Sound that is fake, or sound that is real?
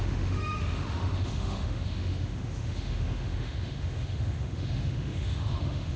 fake